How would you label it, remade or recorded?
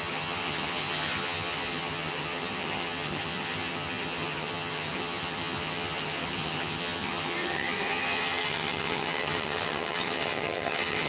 remade